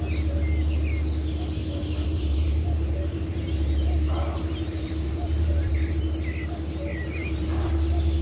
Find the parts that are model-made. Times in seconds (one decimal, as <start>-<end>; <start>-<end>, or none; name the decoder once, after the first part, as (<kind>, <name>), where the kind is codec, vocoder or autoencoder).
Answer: 1.6-6.0 (vocoder, BigVGAN v2); 7.2-7.7